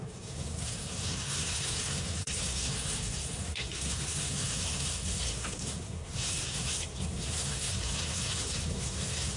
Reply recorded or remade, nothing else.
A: remade